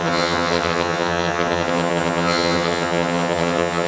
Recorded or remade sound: remade